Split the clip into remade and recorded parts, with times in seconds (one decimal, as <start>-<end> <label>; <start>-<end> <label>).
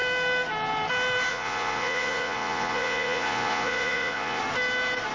0.0-1.3 recorded; 1.3-4.4 remade; 4.4-5.1 recorded